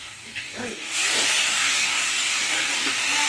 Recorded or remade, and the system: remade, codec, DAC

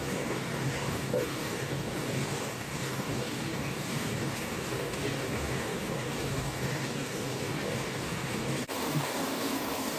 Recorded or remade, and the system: remade, codec, DAC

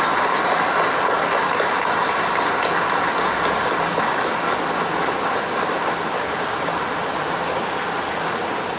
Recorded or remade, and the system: recorded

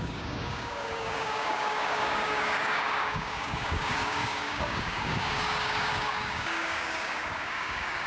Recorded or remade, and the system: remade, codec, DAC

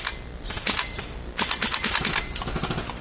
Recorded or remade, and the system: recorded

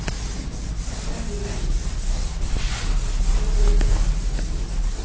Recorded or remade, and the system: recorded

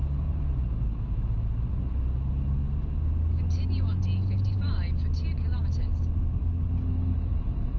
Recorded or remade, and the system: recorded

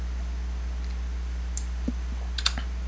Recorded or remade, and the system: recorded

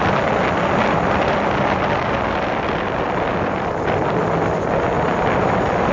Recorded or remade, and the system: recorded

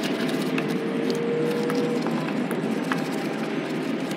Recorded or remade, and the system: recorded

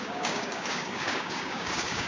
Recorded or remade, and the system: remade, codec, DAC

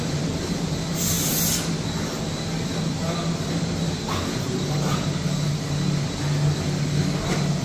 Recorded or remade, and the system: recorded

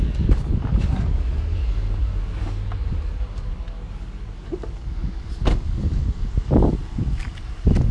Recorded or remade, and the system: remade, codec, DAC